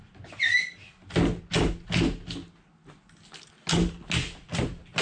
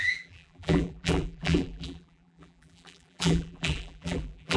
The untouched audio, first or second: first